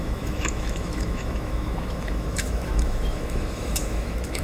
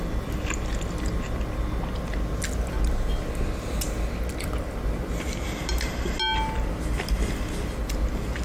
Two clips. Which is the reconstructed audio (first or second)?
first